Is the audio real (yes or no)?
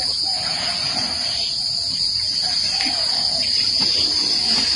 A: no